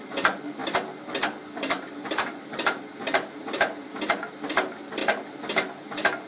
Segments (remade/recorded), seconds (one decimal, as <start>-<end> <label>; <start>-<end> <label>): 0.0-6.3 recorded